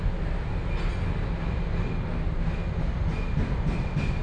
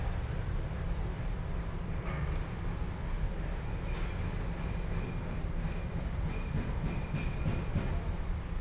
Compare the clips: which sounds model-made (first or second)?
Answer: second